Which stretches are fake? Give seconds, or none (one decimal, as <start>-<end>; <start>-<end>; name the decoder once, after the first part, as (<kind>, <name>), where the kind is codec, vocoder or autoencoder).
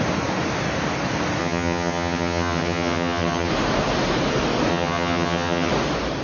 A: 1.4-3.5 (vocoder, HiFi-GAN); 4.7-5.7